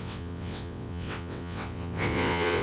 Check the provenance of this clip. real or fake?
fake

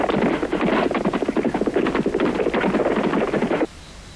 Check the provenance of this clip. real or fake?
real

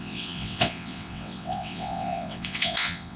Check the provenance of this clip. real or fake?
fake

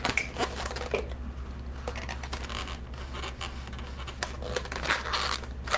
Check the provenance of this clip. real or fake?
real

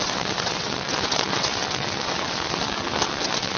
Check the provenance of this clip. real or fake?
fake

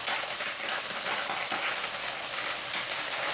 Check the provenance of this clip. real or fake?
real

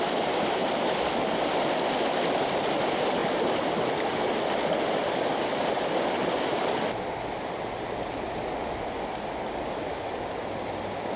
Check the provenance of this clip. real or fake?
real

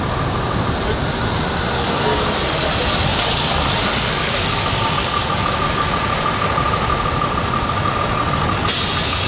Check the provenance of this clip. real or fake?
real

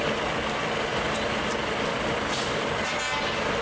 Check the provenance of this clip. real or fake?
real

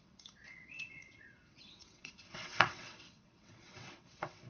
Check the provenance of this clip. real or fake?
fake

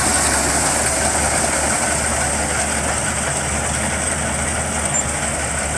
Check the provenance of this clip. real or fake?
real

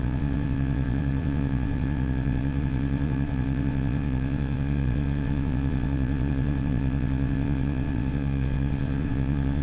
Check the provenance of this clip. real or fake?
fake